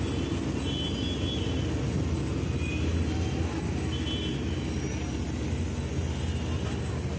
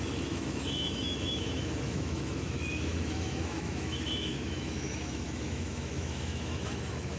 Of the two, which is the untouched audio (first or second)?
first